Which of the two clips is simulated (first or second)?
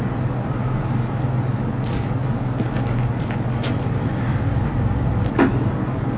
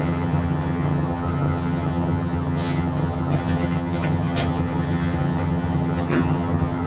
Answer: second